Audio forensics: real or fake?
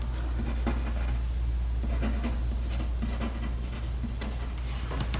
real